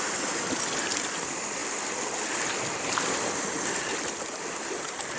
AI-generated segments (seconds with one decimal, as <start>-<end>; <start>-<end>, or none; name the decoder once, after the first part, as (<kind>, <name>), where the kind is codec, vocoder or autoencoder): none